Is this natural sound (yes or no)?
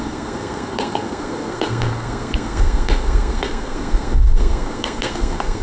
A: no